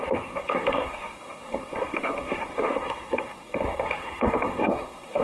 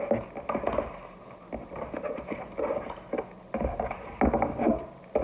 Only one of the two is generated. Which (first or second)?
first